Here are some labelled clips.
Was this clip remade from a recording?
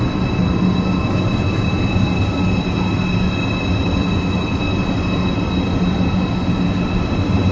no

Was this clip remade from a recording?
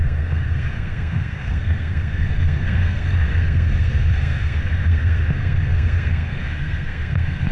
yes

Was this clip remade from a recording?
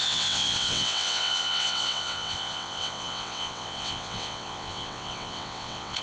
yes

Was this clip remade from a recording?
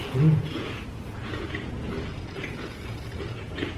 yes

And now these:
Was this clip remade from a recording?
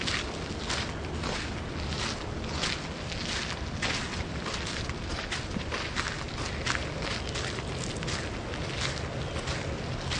no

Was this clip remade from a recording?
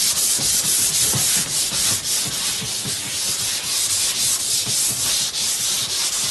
no